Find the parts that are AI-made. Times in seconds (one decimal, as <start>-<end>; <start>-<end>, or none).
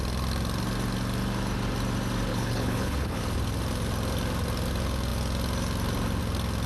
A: 2.3-3.2